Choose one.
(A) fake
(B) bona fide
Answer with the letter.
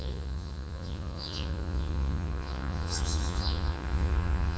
A